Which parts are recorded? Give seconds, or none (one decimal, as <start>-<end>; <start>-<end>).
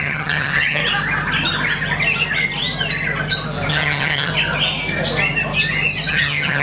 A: 0.8-3.7; 4.3-6.1